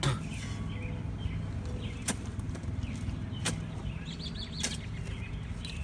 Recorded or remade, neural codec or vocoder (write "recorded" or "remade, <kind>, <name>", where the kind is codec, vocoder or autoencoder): recorded